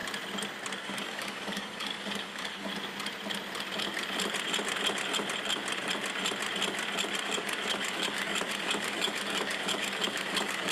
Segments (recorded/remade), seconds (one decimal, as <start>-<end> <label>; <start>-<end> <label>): 0.0-0.8 recorded; 0.8-2.7 remade; 2.7-7.2 recorded; 7.2-10.7 remade